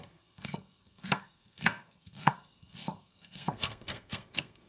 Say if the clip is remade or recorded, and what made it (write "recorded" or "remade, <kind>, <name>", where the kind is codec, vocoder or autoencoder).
remade, codec, SNAC